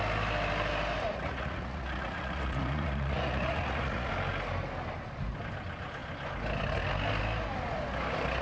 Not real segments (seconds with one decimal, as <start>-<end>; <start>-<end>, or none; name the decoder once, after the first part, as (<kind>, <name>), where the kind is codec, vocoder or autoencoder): 1.1-4.1 (vocoder, Vocos)